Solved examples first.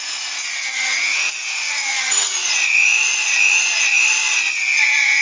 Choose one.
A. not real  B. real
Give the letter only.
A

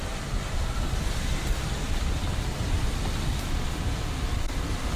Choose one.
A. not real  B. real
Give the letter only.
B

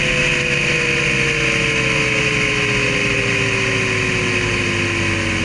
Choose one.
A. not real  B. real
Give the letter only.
B